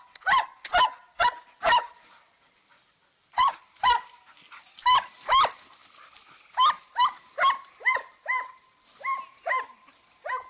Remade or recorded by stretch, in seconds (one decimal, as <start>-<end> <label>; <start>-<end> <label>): 0.0-10.5 recorded